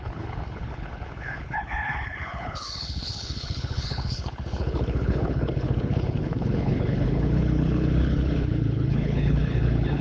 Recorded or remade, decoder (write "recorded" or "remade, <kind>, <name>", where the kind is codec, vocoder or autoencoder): remade, codec, HILCodec